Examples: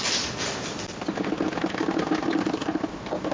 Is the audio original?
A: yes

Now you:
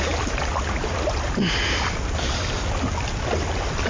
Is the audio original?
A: yes